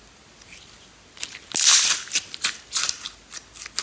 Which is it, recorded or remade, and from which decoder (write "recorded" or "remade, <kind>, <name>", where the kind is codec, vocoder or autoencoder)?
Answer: recorded